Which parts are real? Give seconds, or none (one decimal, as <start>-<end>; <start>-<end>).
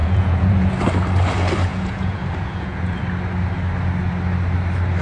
0.7-1.7; 3.0-5.0